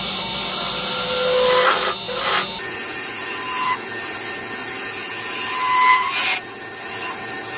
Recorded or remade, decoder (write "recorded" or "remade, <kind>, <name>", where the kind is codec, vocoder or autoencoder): recorded